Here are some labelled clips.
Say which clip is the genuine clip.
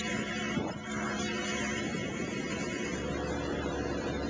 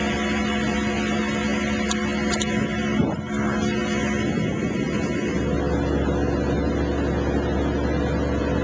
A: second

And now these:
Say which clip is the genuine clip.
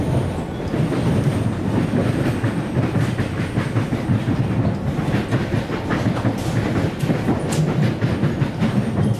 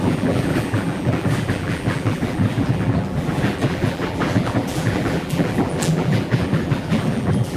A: first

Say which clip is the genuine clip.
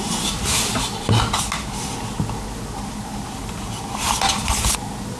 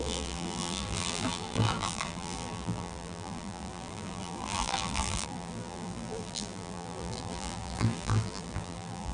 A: first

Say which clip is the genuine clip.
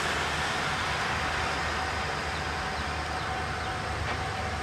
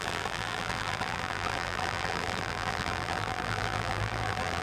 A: first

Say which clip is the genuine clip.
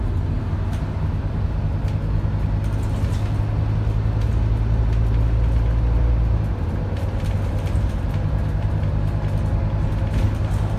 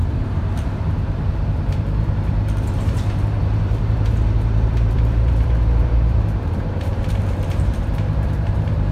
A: first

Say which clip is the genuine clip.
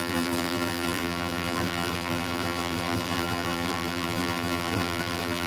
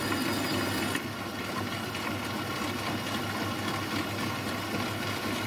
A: second